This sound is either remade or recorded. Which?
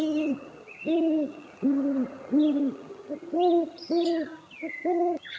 remade